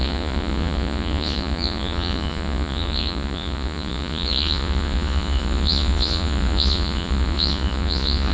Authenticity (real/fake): fake